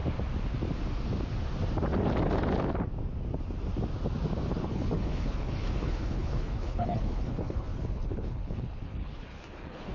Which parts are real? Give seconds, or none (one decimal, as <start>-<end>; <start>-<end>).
0.0-4.5